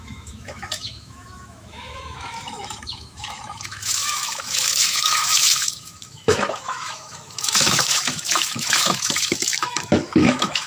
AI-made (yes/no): yes